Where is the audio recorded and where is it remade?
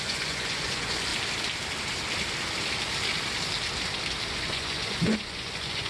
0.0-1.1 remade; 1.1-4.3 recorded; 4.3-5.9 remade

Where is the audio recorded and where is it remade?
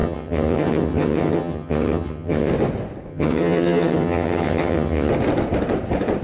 0.0-2.5 remade; 2.5-3.1 recorded; 3.1-5.1 remade; 5.1-6.2 recorded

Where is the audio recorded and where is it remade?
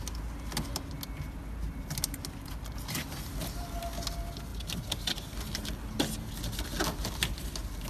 0.0-7.9 recorded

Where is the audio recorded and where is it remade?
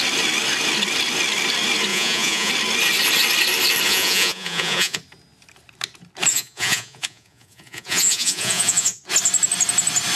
0.0-1.9 recorded; 1.9-2.5 remade; 2.5-3.9 recorded; 3.9-5.0 remade; 5.0-6.3 recorded; 6.3-9.0 remade; 9.0-10.2 recorded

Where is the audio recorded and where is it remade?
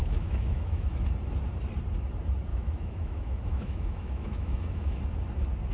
0.0-0.9 remade; 0.9-2.5 recorded; 2.5-5.0 remade; 5.0-5.7 recorded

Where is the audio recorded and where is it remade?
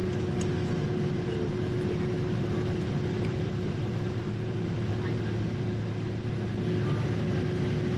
0.0-3.1 recorded; 3.1-4.9 remade; 4.9-8.0 recorded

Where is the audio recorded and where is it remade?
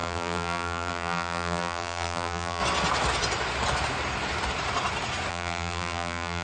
0.0-2.6 remade; 2.6-5.3 recorded; 5.3-6.4 remade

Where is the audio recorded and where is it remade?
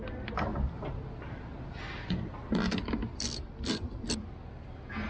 0.0-5.1 recorded